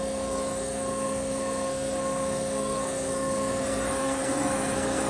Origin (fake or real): fake